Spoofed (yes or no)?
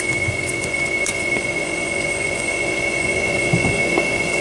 yes